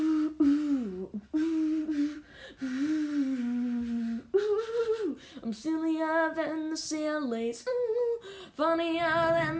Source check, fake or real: real